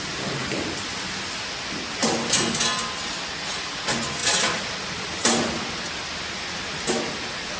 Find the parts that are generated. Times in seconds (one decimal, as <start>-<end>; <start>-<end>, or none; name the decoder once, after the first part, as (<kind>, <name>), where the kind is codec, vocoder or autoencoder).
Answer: none